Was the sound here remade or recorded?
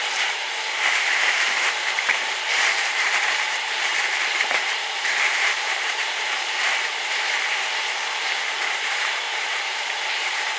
remade